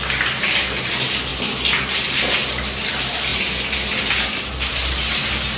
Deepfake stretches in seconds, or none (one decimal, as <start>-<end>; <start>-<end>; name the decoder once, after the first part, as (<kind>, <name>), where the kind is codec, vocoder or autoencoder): none